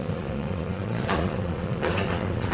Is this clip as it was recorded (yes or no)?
no